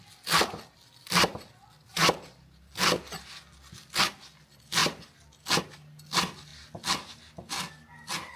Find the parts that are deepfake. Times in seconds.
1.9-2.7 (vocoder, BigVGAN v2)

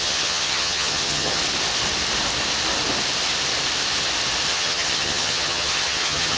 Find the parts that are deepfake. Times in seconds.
0.0-1.4 (vocoder, HiFi-GAN); 4.5-6.4